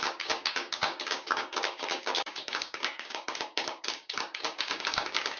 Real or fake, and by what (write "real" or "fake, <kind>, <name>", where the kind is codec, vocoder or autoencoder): fake, codec, DAC